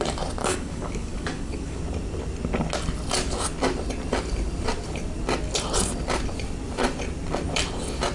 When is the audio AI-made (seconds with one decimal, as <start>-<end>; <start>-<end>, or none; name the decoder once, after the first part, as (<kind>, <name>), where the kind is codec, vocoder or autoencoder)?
0.4-1.8 (codec, DAC)